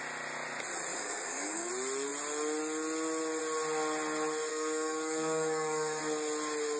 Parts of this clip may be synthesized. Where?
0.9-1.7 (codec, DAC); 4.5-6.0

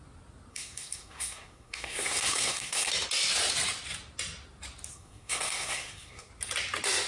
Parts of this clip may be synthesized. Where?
0.5-2.9 (codec, SNAC); 4.9-6.3

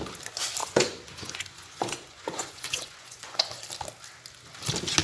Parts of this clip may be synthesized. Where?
0.6-3.6 (vocoder, Vocos)